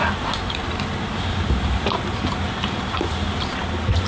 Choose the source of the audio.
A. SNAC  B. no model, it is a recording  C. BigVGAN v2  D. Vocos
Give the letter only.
C